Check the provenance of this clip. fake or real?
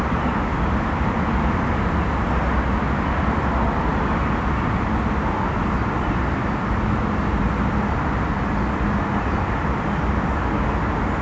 real